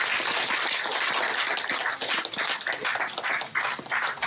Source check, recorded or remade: recorded